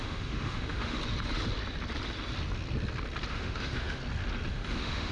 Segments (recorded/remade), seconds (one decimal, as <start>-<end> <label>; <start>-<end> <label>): 0.0-1.0 remade; 1.0-3.3 recorded; 3.3-4.0 remade; 4.0-4.5 recorded; 4.5-5.1 remade